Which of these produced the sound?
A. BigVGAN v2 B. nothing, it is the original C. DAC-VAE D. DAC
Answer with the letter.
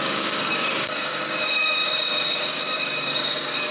D